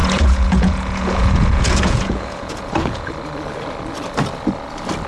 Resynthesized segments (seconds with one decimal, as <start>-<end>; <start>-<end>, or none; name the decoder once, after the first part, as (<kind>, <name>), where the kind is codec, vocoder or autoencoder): 0.0-3.1 (vocoder, Vocos)